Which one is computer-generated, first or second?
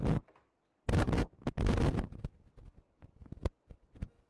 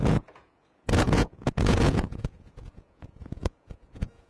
second